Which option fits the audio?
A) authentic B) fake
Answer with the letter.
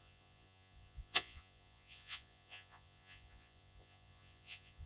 B